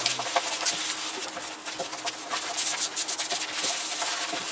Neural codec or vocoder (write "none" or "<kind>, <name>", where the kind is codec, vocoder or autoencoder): none